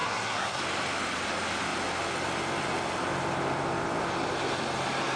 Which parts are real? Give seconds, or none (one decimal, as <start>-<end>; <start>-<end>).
0.6-5.2